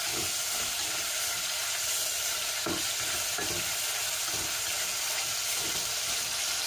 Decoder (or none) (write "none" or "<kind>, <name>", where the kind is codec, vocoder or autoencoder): none